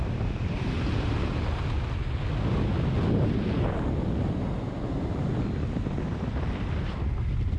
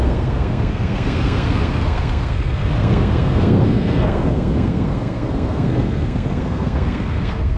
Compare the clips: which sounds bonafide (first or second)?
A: first